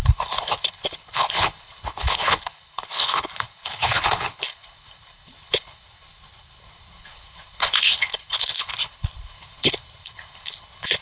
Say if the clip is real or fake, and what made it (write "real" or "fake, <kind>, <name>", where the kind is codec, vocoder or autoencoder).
fake, codec, HILCodec